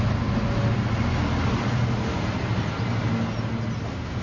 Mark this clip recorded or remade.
recorded